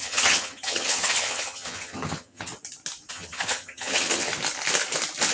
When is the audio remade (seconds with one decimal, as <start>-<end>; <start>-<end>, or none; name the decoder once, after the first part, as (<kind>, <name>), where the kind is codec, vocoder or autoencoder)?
0.0-2.5 (vocoder, HiFi-GAN); 3.1-4.3